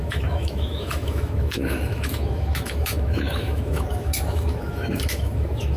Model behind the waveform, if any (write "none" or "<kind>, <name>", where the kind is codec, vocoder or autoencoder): autoencoder, DAC-VAE